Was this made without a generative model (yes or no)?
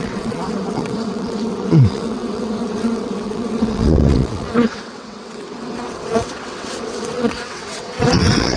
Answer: no